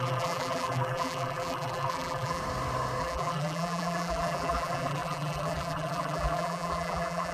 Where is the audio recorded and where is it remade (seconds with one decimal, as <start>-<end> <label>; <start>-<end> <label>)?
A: 0.0-2.4 remade; 2.4-3.0 recorded; 3.0-7.3 remade